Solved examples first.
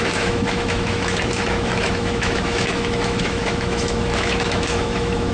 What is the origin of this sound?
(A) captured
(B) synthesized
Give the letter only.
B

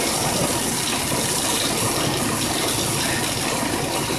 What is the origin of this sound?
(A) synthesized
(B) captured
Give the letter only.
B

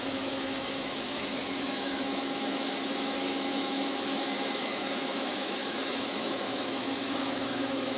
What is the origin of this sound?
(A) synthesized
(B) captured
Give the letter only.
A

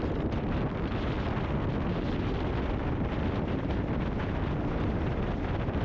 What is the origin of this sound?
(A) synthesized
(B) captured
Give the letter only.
B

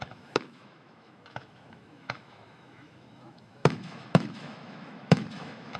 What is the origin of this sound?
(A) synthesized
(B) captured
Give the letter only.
A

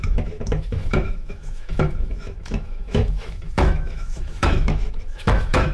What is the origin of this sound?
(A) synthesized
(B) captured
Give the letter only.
A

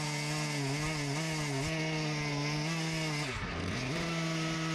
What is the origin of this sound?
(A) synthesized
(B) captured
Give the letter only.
B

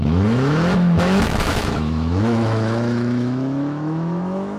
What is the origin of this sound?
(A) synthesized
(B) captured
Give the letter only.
A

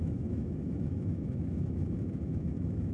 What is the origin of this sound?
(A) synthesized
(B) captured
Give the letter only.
A